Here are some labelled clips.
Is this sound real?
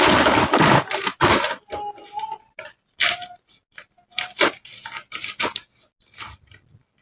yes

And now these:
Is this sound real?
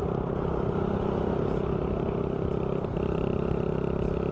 yes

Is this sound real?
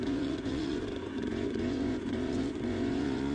no